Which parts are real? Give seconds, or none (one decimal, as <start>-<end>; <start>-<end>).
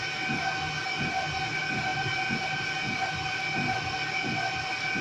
0.0-5.0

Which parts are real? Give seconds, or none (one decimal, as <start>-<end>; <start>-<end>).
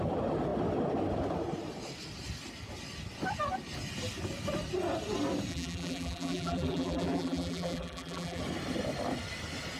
0.0-5.5; 8.4-9.8